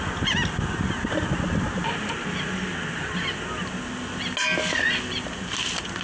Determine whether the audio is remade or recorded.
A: recorded